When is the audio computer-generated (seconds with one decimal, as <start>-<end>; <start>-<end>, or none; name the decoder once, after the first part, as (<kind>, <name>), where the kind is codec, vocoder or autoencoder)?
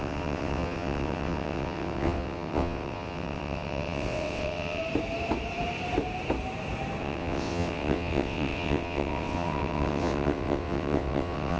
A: 0.0-4.8 (vocoder, WaveNeXt); 7.0-11.6